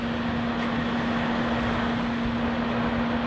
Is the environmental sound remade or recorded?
recorded